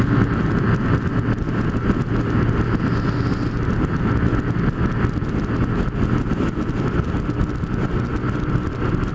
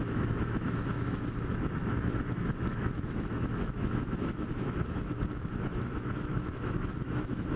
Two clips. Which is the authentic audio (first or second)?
first